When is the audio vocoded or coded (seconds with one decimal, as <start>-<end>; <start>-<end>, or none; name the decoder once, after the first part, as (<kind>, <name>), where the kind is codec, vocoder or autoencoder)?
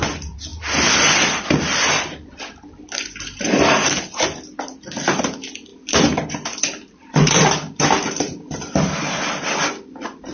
0.5-4.0 (vocoder, BigVGAN v2); 5.7-9.0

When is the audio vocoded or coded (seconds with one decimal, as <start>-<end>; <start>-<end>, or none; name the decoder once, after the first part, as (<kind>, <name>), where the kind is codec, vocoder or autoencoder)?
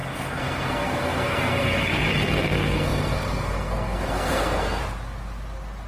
0.0-4.8 (codec, SNAC)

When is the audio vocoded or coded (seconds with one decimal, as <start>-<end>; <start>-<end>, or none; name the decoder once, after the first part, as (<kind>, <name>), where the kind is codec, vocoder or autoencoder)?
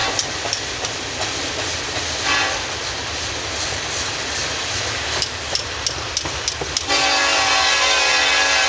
none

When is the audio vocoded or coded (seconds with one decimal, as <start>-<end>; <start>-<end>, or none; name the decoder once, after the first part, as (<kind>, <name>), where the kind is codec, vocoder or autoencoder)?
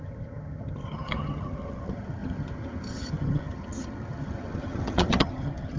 0.0-5.8 (vocoder, HiFi-GAN)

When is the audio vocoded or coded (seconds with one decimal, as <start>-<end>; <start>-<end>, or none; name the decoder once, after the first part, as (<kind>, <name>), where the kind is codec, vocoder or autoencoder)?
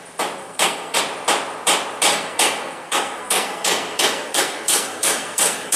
0.4-1.0 (codec, SNAC); 2.1-5.8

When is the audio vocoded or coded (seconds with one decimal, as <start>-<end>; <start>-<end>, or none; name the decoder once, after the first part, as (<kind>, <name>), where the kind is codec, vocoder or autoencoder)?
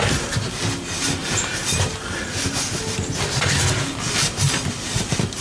none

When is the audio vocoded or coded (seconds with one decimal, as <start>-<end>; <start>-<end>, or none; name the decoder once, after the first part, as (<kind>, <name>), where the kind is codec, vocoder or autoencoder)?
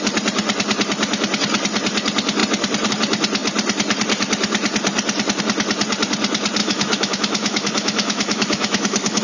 6.6-9.2 (autoencoder, DAC-VAE)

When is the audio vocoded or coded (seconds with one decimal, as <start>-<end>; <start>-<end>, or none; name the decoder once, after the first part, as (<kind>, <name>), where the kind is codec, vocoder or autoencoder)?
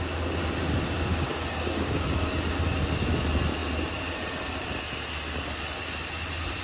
1.1-2.6 (codec, DAC)